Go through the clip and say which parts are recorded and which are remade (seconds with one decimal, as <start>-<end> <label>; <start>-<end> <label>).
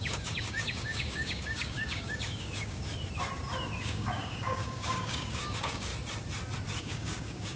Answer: 0.0-2.9 remade; 2.9-3.8 recorded; 3.8-5.9 remade; 5.9-6.8 recorded; 6.8-7.6 remade